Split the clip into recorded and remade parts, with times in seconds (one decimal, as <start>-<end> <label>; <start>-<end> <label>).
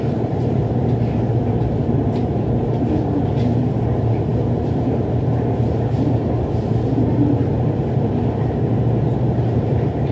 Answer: 0.0-10.1 remade